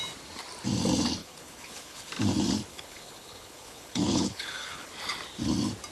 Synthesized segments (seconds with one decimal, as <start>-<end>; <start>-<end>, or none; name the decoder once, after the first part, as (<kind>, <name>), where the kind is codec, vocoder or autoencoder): 1.2-2.1 (codec, HILCodec); 2.7-4.9